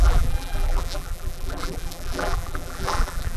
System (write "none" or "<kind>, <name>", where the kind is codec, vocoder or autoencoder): vocoder, BigVGAN v2